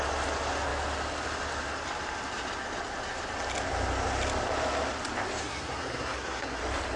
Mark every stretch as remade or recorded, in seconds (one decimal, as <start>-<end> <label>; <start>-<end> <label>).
0.0-5.4 recorded; 5.4-6.6 remade; 6.6-7.0 recorded